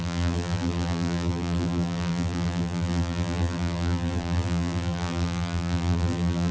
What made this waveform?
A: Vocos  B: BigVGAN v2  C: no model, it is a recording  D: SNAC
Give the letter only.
B